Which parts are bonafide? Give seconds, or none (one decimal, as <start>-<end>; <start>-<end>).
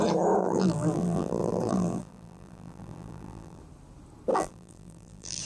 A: 0.0-0.4; 3.6-4.3